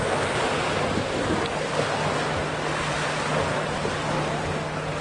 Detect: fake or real real